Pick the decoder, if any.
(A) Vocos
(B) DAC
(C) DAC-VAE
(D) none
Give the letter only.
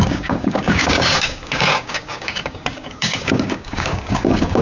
B